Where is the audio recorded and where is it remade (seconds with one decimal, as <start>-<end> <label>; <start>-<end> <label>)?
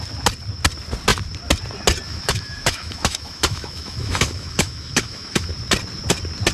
0.0-2.1 recorded; 2.1-5.5 remade; 5.5-6.5 recorded